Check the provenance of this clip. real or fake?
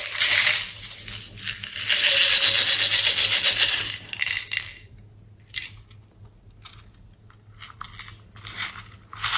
real